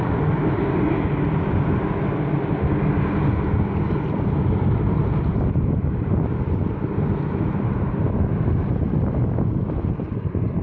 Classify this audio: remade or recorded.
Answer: recorded